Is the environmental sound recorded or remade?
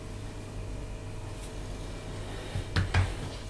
recorded